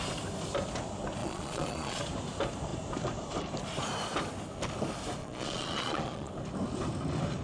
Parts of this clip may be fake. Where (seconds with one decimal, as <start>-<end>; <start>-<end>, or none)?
1.2-2.0; 5.2-6.3